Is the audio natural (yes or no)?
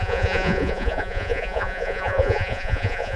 no